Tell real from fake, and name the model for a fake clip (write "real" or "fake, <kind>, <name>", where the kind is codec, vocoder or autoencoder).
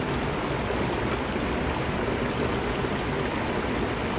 real